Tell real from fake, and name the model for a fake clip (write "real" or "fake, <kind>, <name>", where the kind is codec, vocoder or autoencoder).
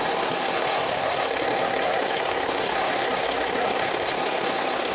fake, codec, SNAC